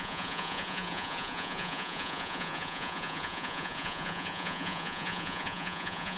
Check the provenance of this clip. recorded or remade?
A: remade